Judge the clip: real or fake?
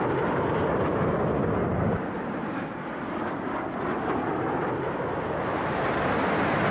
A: real